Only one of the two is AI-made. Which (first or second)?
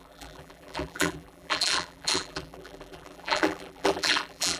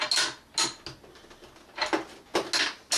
first